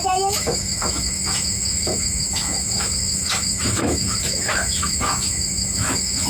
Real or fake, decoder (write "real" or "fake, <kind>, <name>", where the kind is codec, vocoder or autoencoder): fake, autoencoder, DAC-VAE